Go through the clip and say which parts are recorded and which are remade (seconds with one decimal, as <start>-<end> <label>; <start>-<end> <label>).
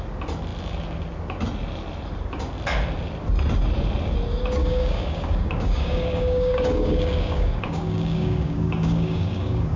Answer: 0.0-4.6 recorded; 4.6-9.8 remade